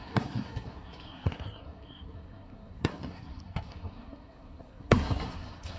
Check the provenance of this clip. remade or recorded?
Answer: remade